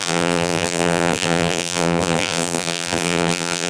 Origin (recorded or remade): remade